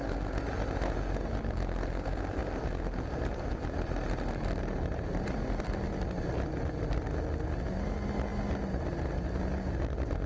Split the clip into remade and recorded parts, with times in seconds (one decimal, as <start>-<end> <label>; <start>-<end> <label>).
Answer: 0.0-10.3 recorded